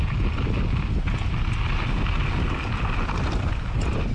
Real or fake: real